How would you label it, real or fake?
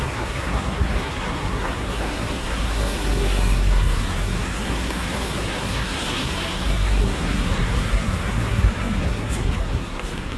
fake